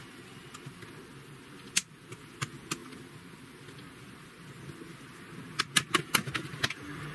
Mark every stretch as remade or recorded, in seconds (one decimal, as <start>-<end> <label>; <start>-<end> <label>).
0.0-7.1 recorded